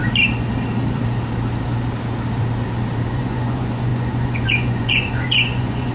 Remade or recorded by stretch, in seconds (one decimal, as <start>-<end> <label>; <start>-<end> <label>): 0.0-3.1 recorded; 3.1-5.9 remade